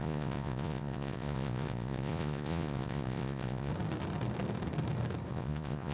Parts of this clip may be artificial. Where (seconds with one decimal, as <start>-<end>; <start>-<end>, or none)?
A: 0.0-3.7; 5.3-5.9